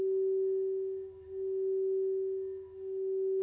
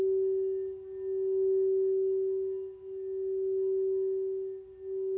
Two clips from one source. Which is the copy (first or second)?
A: first